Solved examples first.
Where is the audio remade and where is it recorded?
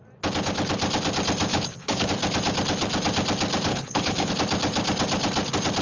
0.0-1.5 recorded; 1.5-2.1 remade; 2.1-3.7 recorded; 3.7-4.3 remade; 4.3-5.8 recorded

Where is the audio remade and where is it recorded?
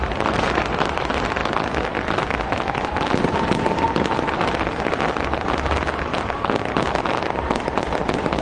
0.0-1.4 remade; 1.4-3.2 recorded; 3.2-8.4 remade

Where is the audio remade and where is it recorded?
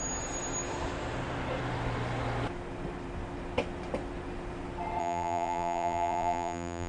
0.0-5.0 recorded; 5.0-6.9 remade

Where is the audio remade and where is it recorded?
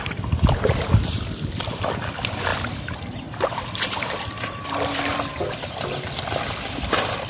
0.0-7.3 remade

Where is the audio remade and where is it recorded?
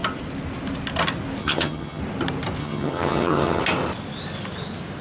0.0-1.4 recorded; 1.4-2.0 remade; 2.0-2.6 recorded; 2.6-3.6 remade; 3.6-5.0 recorded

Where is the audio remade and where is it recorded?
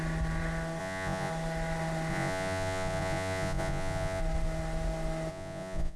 0.0-0.8 recorded; 0.8-1.3 remade; 1.3-2.1 recorded; 2.1-4.2 remade; 4.2-5.3 recorded; 5.3-6.0 remade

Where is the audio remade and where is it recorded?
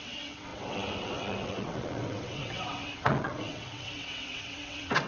0.0-5.1 remade